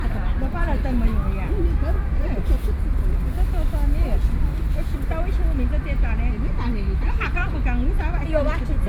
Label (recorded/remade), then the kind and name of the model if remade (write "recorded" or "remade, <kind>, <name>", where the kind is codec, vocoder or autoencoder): recorded